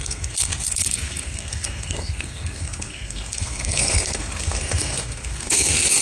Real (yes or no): no